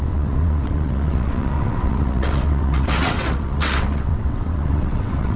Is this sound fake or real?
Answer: fake